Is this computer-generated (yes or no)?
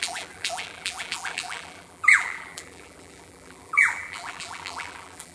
yes